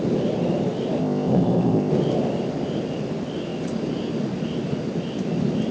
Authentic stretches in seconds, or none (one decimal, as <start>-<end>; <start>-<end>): 0.0-1.0; 1.9-5.7